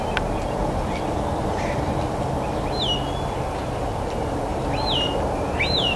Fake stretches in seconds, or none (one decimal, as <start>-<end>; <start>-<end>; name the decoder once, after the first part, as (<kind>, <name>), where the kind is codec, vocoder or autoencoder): 0.6-2.8 (vocoder, BigVGAN v2); 4.5-5.1